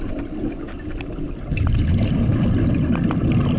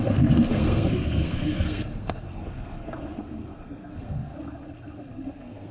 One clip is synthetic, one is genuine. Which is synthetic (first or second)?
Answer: second